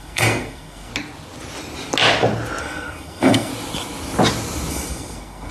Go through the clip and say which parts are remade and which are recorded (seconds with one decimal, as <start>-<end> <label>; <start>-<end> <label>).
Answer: 0.0-0.9 remade; 0.9-2.6 recorded; 2.6-3.5 remade; 3.5-4.7 recorded; 4.7-5.5 remade